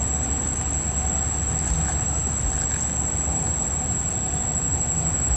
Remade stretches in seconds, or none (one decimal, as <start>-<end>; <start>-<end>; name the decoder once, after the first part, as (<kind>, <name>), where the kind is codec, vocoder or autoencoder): none